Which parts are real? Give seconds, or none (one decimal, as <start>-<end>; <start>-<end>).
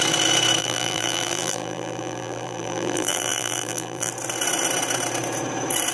0.0-0.6; 4.1-5.9